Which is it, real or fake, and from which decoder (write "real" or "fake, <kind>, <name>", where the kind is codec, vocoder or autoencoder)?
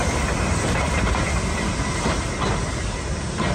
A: real